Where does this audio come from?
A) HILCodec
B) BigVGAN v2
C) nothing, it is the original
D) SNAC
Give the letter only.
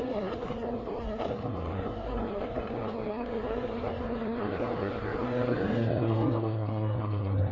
D